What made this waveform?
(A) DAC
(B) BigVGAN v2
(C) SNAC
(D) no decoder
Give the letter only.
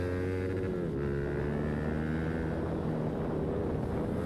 D